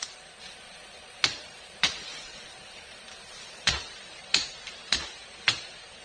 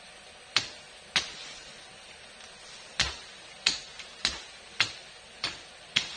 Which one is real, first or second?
second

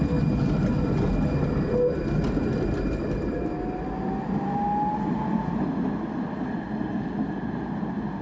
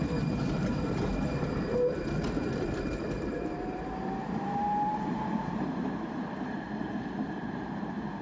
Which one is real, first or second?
first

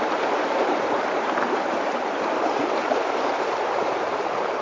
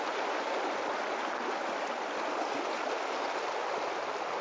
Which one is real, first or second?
second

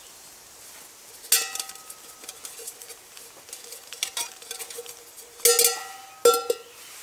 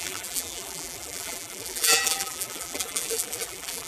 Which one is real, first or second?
first